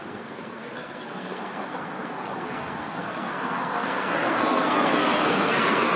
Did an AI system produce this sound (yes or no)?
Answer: yes